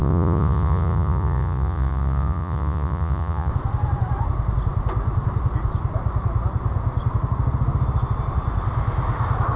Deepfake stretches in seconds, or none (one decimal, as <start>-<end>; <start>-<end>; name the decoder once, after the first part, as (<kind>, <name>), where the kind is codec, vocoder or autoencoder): 0.0-3.5 (vocoder, Vocos)